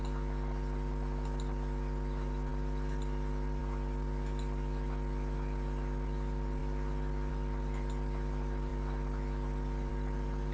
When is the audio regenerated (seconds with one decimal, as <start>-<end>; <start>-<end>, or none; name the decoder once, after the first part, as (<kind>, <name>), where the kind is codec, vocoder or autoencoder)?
none